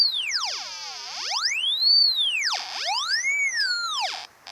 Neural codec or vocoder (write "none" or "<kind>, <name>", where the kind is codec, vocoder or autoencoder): vocoder, BigVGAN v2